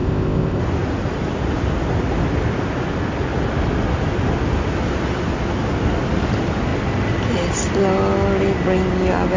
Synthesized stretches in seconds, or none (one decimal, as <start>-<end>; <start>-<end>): 0.0-0.6